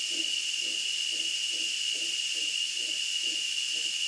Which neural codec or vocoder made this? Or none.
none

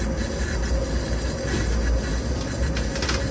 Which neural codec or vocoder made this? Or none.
none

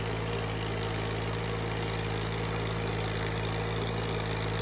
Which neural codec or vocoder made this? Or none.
none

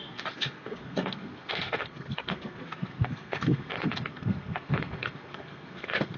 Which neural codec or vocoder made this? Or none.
codec, SNAC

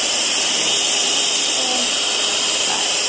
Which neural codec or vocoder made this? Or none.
vocoder, BigVGAN v2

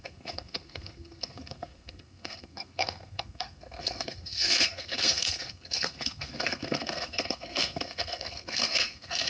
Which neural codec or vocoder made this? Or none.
codec, SNAC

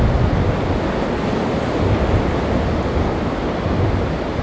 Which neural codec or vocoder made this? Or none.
none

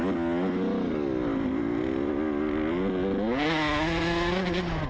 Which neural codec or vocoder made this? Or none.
none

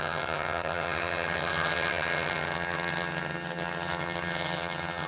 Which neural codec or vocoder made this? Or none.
vocoder, HiFi-GAN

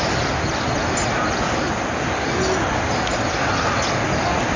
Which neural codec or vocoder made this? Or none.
none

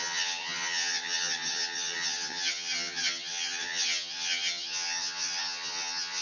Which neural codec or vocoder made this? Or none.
vocoder, HiFi-GAN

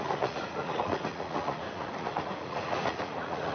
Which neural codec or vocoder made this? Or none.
vocoder, Vocos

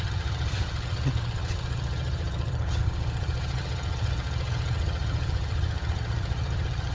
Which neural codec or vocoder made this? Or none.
vocoder, HiFi-GAN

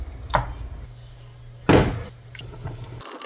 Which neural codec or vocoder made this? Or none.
none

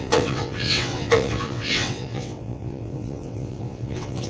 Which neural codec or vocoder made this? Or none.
vocoder, WaveNeXt